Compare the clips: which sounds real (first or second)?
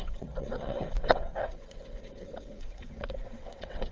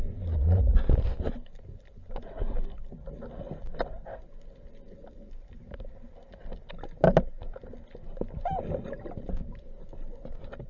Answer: second